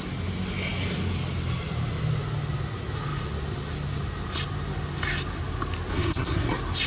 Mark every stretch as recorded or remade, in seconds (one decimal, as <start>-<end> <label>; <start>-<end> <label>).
0.0-5.9 recorded; 5.9-6.5 remade; 6.5-6.9 recorded